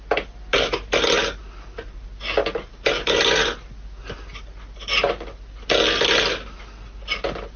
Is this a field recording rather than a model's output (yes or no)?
yes